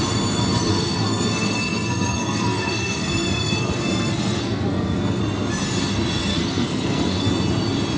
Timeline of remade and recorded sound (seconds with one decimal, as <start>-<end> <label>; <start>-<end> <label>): 0.0-0.7 recorded; 0.7-5.2 remade; 5.2-6.3 recorded; 6.3-7.3 remade; 7.3-8.0 recorded